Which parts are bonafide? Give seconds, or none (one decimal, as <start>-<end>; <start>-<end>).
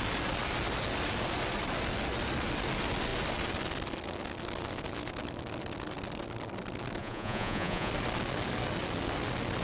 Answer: 0.0-7.0; 7.9-9.6